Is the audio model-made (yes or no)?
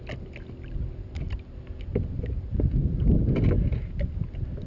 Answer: no